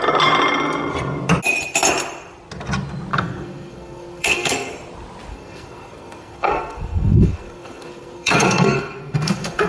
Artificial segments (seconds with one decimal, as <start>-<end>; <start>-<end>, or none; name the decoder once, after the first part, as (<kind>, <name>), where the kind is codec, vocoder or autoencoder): 3.1-4.7 (codec, SNAC); 5.3-9.7